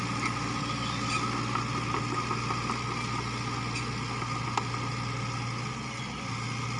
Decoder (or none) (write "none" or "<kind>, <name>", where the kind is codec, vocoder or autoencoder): none